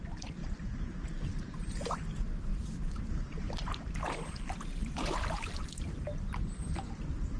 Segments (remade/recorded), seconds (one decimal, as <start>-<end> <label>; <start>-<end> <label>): 0.0-0.4 recorded; 0.4-2.0 remade; 2.0-2.5 recorded; 2.5-3.4 remade; 3.4-4.8 recorded; 4.8-6.6 remade; 6.6-7.4 recorded